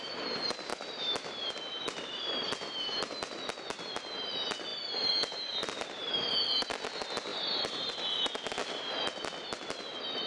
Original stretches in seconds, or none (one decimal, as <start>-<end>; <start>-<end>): 0.0-4.7; 6.1-7.3; 7.9-10.3

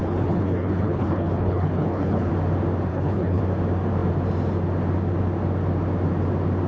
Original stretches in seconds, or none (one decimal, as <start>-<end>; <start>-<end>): 2.3-2.9; 3.4-6.7

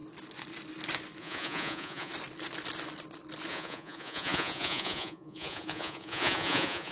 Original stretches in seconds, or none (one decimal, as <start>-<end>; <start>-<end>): 0.0-1.2; 2.1-3.5

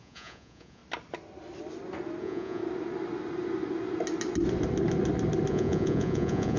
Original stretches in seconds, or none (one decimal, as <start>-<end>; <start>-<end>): 0.8-2.2; 2.6-5.5

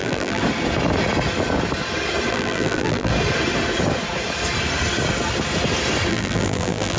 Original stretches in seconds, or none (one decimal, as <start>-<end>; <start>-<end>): 0.4-2.3; 3.1-6.1

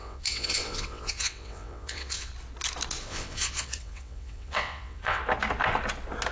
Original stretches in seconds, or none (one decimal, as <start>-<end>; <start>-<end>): 2.3-3.0; 5.2-6.3

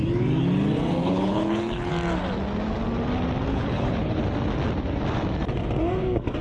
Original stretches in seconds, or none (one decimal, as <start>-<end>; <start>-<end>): 0.0-1.0; 1.9-3.5; 4.2-6.4